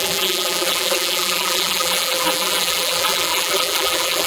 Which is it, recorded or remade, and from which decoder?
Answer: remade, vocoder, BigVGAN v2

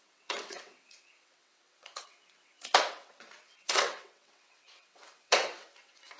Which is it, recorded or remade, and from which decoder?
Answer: remade, vocoder, WaveNeXt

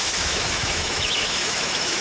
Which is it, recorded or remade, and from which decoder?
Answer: remade, autoencoder, DAC-VAE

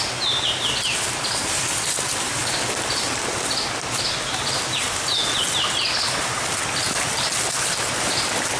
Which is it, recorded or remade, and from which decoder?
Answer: recorded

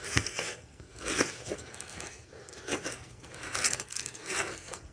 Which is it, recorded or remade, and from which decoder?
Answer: remade, codec, SNAC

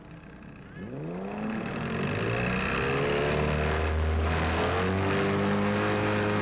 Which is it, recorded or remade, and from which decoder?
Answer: recorded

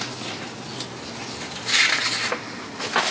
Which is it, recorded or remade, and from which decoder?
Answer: recorded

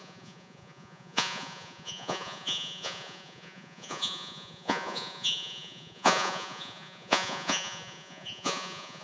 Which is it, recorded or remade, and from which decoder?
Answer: remade, vocoder, Vocos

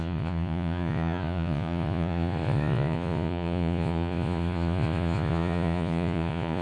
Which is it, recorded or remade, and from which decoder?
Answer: remade, vocoder, Vocos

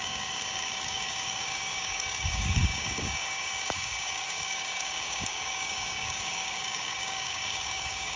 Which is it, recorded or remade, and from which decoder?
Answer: remade, codec, DAC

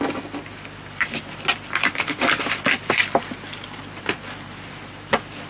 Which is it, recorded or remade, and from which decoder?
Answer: recorded